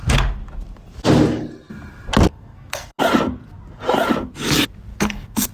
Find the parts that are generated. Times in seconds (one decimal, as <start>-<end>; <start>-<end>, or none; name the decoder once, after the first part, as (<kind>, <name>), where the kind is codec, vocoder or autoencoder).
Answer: 2.3-3.0 (codec, SNAC); 4.9-5.5